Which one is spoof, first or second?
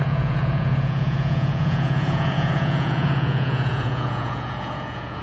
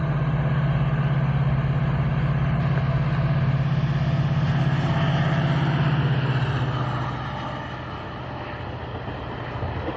first